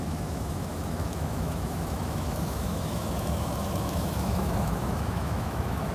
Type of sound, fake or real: fake